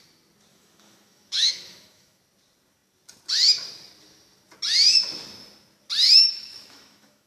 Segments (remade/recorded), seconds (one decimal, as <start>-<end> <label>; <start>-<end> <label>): 0.0-0.5 recorded; 0.5-2.2 remade; 2.2-6.2 recorded; 6.2-7.3 remade